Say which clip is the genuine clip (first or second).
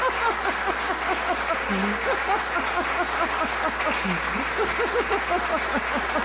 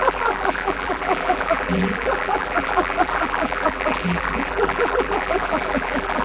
first